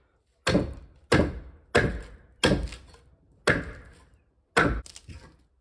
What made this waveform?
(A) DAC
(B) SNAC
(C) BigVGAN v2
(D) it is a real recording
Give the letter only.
D